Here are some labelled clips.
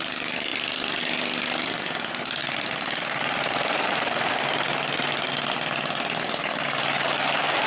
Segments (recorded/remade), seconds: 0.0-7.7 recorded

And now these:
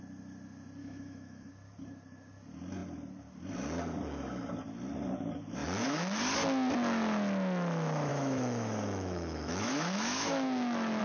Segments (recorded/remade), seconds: 0.0-0.8 recorded; 0.8-1.5 remade; 1.5-5.6 recorded; 5.6-6.2 remade; 6.2-8.1 recorded; 8.1-11.0 remade